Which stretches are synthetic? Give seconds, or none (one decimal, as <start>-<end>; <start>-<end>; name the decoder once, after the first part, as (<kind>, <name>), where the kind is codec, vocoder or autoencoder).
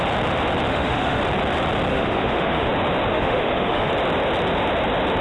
0.7-1.2 (autoencoder, DAC-VAE); 1.9-2.7; 3.1-3.9